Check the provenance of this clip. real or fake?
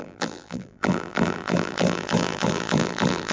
fake